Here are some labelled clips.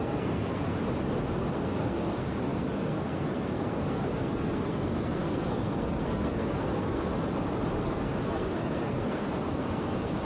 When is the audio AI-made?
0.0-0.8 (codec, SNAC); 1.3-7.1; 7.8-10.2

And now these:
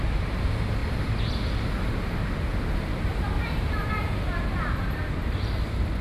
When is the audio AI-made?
0.0-0.8 (vocoder, BigVGAN v2); 1.9-6.0

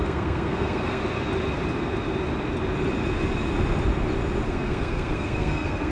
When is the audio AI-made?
0.0-1.0 (codec, SNAC); 4.5-5.9

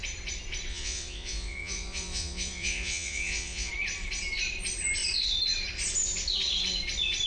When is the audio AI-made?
0.7-3.7 (vocoder, Vocos)

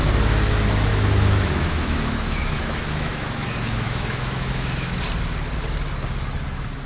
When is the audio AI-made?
0.9-5.0 (autoencoder, DAC-VAE)

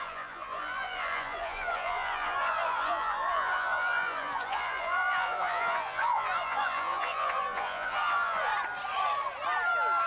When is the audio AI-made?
0.0-8.5 (vocoder, Vocos)